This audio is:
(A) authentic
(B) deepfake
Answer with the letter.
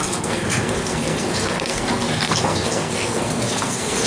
B